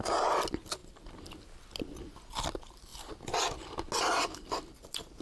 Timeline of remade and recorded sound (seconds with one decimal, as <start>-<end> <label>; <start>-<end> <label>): 0.0-5.2 recorded